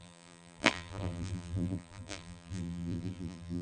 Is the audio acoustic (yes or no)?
no